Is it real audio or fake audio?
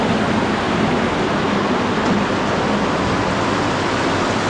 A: real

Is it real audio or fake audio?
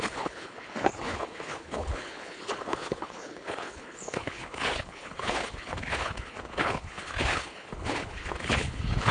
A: fake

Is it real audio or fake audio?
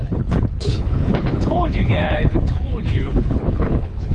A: fake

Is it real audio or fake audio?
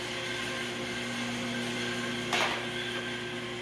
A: real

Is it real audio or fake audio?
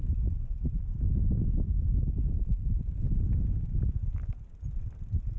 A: real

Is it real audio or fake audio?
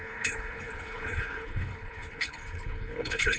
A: fake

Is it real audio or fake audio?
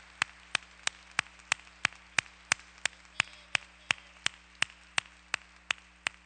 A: real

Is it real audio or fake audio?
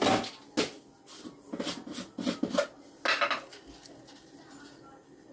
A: real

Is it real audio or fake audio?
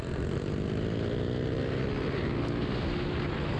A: real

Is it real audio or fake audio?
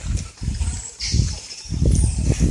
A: real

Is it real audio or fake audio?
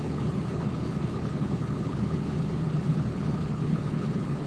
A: fake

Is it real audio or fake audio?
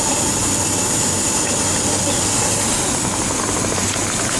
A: real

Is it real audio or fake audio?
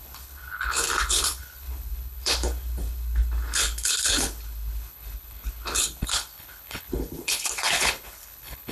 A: fake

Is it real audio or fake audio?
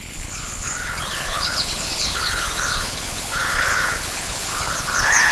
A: fake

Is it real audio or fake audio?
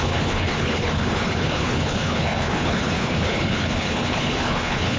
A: fake